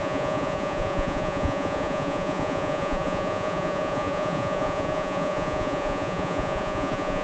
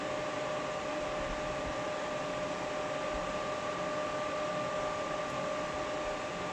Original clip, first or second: second